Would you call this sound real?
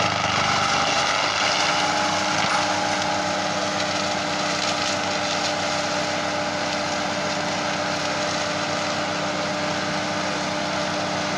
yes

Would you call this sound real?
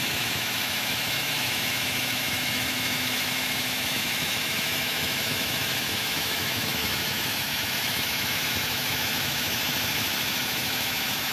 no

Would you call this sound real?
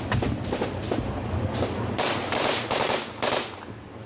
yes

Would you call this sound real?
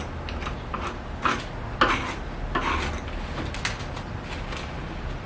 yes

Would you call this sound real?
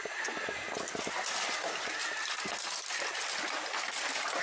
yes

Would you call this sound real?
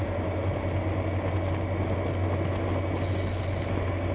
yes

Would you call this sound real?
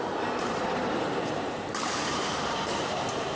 no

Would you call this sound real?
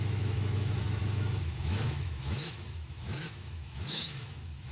no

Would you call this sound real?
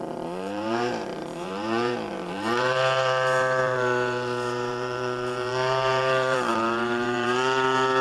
no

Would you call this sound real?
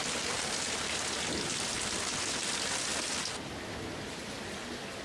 yes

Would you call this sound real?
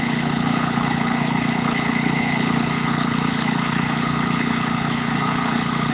no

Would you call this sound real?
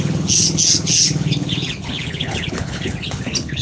no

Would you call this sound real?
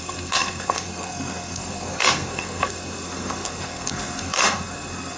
no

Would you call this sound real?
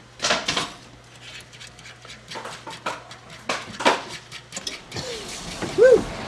yes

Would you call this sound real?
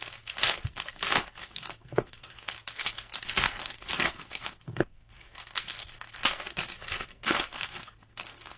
no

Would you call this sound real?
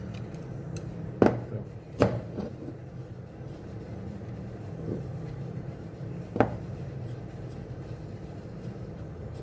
no